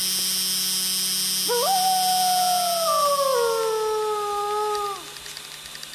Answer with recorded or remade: recorded